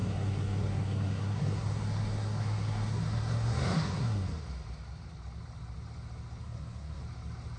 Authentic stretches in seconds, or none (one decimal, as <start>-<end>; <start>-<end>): 4.4-6.4; 7.0-7.6